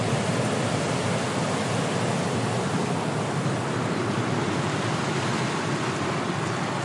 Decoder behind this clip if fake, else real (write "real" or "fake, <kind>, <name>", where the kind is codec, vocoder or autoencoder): real